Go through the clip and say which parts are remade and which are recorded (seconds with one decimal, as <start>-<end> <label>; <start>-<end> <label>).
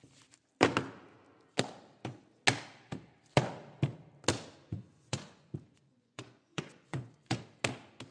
0.0-4.7 recorded; 4.7-7.4 remade; 7.4-8.1 recorded